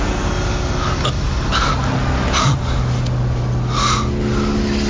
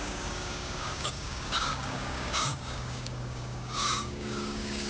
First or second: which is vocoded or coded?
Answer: second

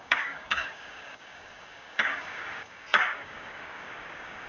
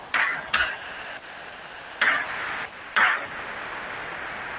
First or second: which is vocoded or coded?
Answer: first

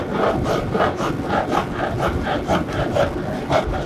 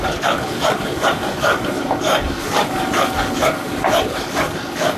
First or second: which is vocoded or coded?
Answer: second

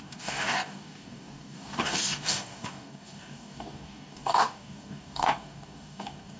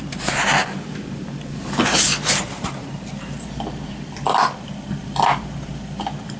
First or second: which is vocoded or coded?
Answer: first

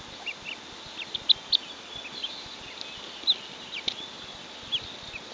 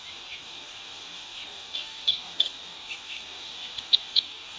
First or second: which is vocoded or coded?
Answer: second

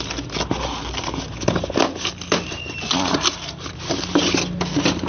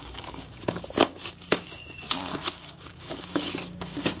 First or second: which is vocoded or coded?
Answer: second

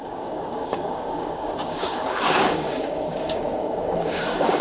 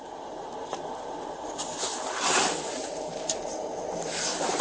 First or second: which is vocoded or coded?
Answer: first